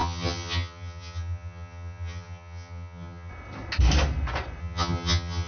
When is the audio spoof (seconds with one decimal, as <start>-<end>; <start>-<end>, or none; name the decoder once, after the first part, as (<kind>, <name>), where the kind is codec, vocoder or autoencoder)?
0.0-3.3 (vocoder, HiFi-GAN); 4.6-5.5